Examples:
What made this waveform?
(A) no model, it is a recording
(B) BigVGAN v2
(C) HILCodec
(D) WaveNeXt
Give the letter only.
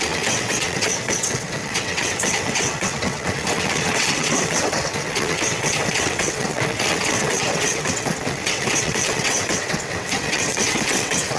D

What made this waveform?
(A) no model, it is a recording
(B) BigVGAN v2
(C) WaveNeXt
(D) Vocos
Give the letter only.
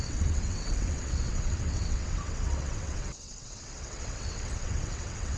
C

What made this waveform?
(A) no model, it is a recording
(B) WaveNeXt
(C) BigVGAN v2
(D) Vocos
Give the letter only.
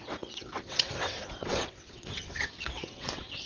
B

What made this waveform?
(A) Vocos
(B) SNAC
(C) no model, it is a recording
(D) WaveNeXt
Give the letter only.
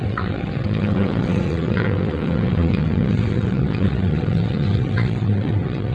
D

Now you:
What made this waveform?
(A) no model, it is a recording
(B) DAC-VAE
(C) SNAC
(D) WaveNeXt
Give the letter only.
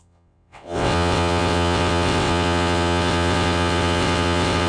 D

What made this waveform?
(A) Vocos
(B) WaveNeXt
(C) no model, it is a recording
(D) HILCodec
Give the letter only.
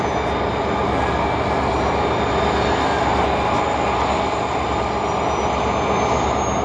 C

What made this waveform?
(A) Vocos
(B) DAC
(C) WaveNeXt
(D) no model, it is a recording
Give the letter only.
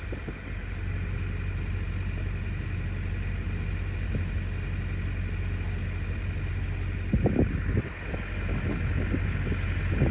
D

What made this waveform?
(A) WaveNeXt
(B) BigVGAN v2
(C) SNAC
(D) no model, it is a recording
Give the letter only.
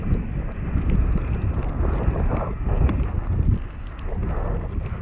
D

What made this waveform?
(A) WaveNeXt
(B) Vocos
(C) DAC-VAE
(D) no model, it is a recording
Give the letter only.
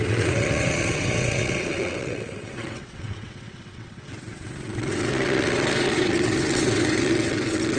A